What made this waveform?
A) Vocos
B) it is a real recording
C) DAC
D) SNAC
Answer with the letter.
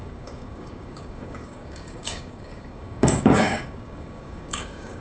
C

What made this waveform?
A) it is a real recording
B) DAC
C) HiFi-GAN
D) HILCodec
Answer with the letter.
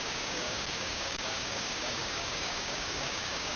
B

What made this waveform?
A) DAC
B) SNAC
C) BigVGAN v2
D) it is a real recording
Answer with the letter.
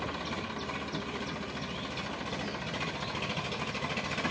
D